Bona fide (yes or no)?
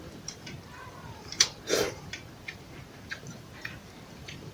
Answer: no